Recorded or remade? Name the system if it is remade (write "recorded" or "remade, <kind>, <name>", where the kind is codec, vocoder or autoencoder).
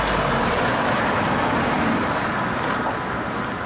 recorded